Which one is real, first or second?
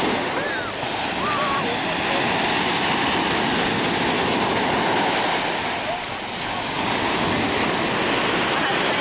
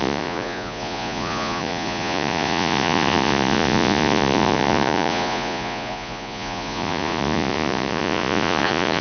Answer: first